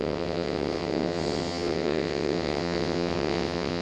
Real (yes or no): no